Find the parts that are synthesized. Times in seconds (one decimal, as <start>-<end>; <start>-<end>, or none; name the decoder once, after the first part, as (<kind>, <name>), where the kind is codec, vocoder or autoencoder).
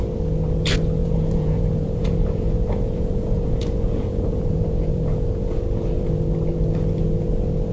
1.0-5.6 (vocoder, Vocos)